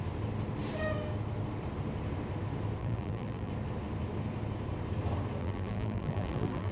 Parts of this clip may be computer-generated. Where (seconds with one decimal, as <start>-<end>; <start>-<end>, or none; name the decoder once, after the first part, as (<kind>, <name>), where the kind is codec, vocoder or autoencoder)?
2.8-3.5 (vocoder, BigVGAN v2); 5.4-6.7